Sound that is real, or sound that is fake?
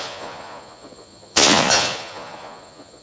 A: fake